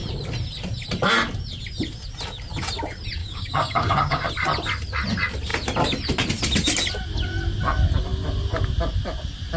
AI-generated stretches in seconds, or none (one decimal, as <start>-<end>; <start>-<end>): 3.2-4.3